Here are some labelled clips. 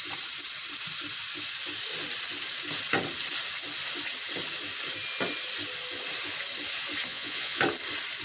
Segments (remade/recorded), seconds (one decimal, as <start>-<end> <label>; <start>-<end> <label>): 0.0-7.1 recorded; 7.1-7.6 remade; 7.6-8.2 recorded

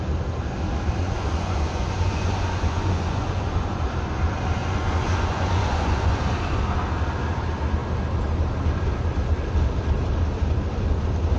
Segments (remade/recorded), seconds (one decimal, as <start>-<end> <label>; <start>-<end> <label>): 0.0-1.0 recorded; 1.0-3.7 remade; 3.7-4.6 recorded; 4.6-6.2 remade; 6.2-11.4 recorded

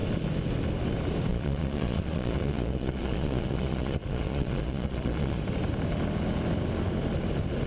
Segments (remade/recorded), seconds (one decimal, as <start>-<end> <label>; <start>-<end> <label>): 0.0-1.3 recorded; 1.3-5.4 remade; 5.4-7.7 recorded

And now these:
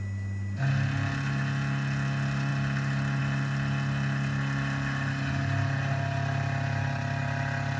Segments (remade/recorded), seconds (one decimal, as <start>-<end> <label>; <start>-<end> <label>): 0.0-7.8 recorded

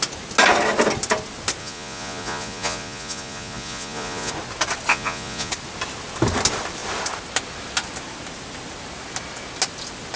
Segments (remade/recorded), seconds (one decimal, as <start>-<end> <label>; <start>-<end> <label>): 0.0-1.6 recorded; 1.6-4.3 remade; 4.3-4.9 recorded; 4.9-5.5 remade; 5.5-10.2 recorded

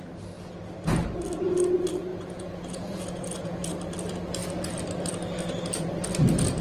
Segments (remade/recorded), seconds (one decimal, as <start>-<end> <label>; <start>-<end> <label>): 0.0-2.1 recorded; 2.1-3.7 remade; 3.7-6.6 recorded

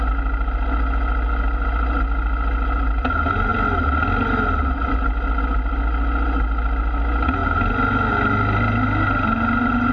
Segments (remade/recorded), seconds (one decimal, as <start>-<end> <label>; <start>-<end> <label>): 0.0-9.9 recorded

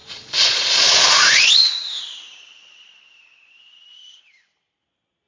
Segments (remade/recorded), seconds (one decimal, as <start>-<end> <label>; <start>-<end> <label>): 0.0-1.6 remade; 1.6-4.8 recorded; 4.8-5.3 remade